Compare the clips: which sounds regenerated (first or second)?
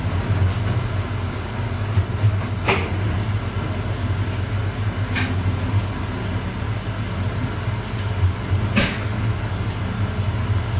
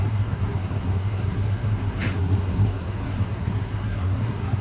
second